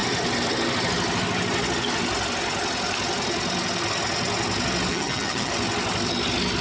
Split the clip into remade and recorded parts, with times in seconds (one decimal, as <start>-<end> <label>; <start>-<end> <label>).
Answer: 0.0-4.9 recorded; 4.9-5.5 remade; 5.5-6.6 recorded